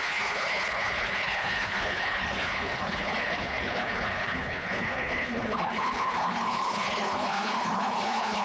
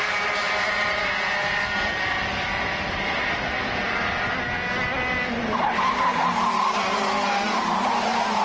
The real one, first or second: second